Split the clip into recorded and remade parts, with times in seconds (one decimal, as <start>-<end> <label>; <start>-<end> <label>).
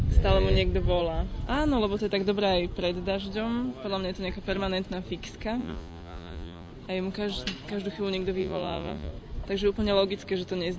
0.0-5.6 recorded; 5.6-6.7 remade; 6.7-8.4 recorded; 8.4-9.1 remade; 9.1-10.8 recorded